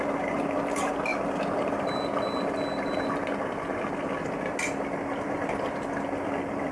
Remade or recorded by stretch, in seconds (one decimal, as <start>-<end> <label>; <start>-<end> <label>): 0.0-6.7 recorded